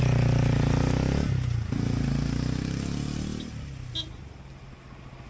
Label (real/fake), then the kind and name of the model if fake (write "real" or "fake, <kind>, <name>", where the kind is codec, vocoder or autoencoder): real